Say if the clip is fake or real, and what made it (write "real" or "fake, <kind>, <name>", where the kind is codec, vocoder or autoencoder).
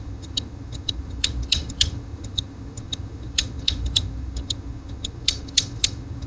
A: fake, vocoder, HiFi-GAN